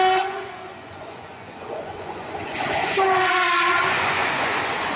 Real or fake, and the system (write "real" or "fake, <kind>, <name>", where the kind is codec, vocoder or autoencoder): fake, vocoder, Vocos